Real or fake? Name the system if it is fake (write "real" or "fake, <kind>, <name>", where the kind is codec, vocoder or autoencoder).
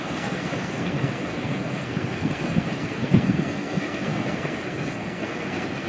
fake, codec, SNAC